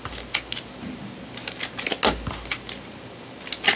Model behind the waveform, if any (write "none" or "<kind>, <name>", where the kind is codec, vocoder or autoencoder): none